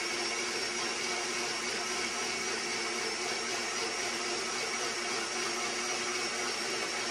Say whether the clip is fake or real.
real